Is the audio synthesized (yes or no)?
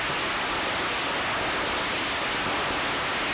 no